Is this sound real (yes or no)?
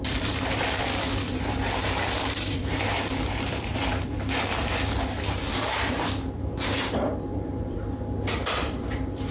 no